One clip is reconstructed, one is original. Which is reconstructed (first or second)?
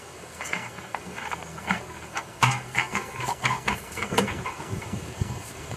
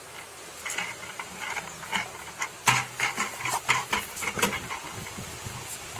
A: first